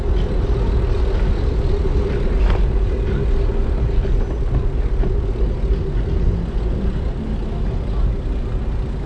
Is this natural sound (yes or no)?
yes